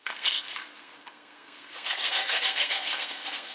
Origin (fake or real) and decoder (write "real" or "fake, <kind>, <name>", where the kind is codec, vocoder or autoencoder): fake, codec, SNAC